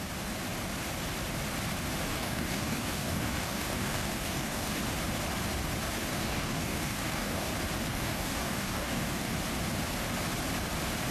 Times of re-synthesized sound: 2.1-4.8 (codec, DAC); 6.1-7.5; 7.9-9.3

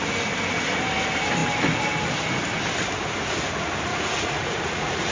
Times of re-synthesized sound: 3.9-5.1 (vocoder, Vocos)

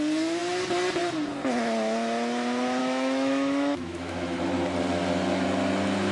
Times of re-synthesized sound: 2.8-4.4 (autoencoder, DAC-VAE)

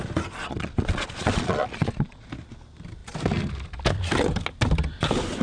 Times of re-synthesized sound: 0.4-2.3 (vocoder, Vocos)

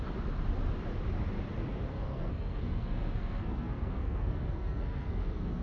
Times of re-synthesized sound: 1.9-5.6 (codec, SNAC)